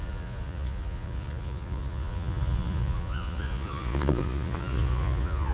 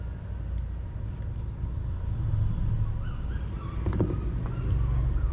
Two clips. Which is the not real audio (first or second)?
first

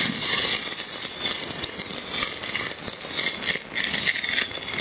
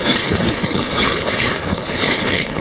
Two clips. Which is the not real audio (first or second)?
second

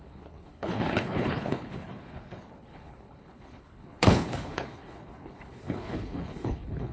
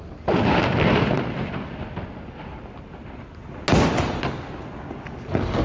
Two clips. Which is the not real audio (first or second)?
first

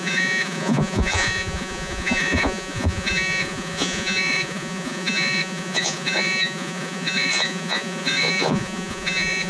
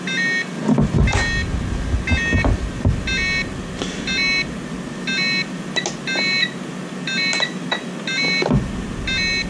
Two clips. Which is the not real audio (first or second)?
first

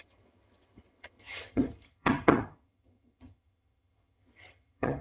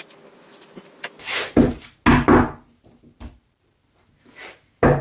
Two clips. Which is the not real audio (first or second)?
first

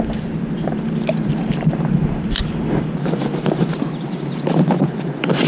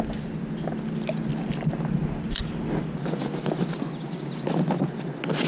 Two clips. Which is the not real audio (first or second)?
first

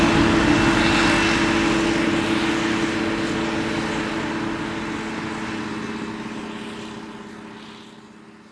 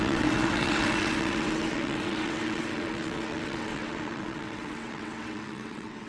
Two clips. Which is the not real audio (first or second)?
second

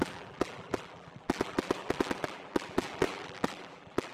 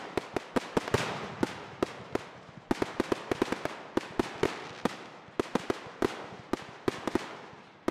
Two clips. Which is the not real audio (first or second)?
first